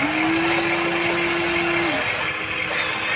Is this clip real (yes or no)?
yes